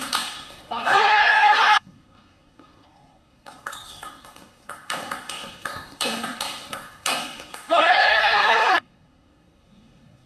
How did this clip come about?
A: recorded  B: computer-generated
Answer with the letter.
B